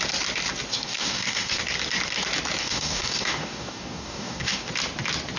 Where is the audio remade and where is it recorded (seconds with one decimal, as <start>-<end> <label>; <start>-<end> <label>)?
0.0-0.7 recorded; 0.7-1.6 remade; 1.6-2.6 recorded; 2.6-4.7 remade; 4.7-5.4 recorded